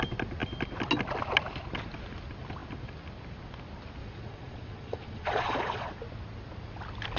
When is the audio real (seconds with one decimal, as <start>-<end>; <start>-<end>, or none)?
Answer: 0.0-4.0; 5.9-7.2

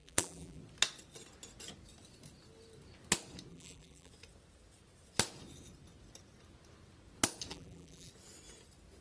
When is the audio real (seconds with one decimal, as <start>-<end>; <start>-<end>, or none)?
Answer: 0.6-3.5; 4.1-7.5; 8.1-9.0

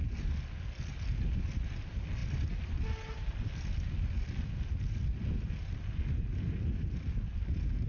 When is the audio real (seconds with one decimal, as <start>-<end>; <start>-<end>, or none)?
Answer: 0.0-7.9

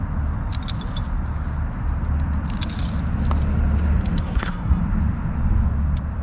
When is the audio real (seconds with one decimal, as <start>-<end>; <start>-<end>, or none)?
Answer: 0.0-4.2; 4.8-6.2

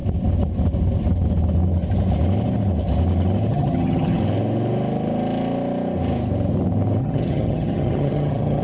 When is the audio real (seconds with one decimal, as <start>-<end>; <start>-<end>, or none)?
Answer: 0.0-3.5; 4.2-7.0

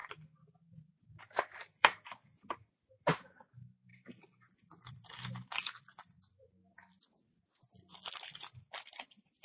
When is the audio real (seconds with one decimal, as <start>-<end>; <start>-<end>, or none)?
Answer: 0.0-1.2

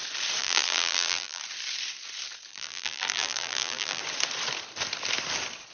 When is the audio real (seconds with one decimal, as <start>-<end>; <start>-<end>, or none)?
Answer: 0.0-0.4; 1.4-2.5; 4.0-5.7

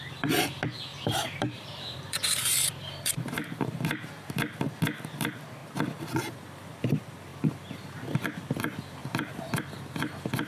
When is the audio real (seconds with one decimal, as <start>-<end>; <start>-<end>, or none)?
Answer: 0.0-0.9; 4.4-9.0; 9.6-10.5